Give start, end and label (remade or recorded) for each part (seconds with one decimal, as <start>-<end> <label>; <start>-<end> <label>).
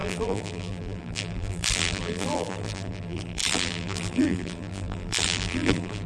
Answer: 0.0-6.1 remade